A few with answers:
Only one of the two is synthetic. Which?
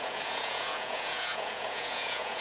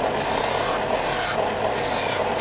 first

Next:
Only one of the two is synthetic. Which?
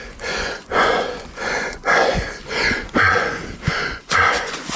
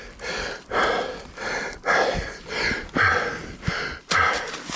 first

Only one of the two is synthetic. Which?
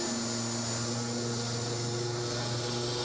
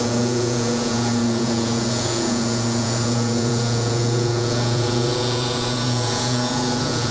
second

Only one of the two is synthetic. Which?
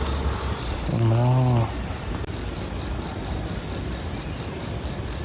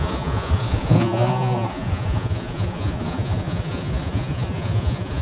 second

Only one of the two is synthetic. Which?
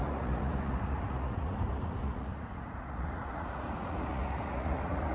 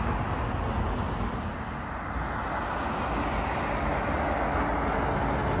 first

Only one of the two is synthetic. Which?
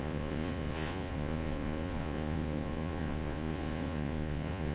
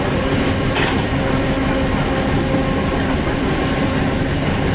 first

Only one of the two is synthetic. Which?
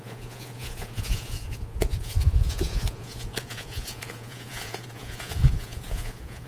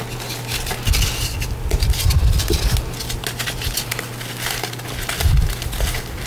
first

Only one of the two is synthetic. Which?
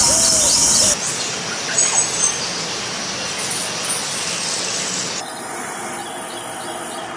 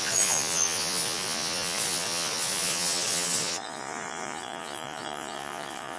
second